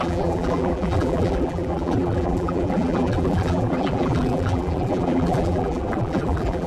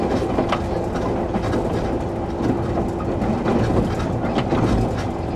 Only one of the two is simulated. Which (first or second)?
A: first